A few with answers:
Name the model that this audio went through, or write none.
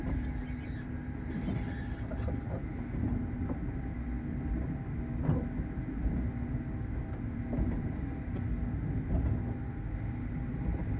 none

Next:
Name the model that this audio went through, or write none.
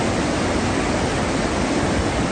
none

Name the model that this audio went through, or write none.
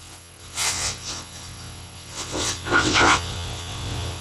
vocoder, WaveNeXt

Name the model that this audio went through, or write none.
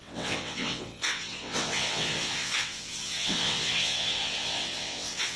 vocoder, WaveNeXt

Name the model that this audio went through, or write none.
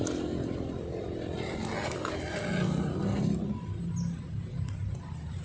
none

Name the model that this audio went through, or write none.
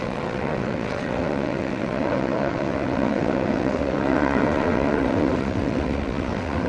vocoder, WaveNeXt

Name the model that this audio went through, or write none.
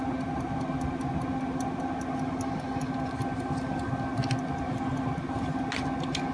none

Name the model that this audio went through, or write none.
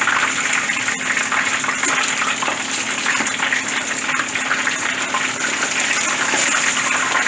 none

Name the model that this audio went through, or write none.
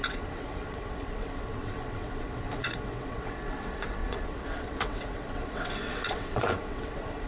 vocoder, WaveNeXt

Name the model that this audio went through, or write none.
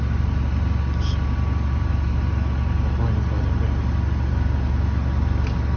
none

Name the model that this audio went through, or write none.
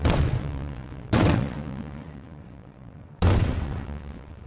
vocoder, WaveNeXt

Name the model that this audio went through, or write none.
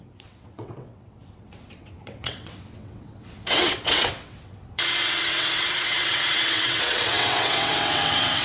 vocoder, WaveNeXt